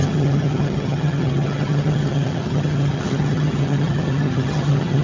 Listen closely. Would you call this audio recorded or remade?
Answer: remade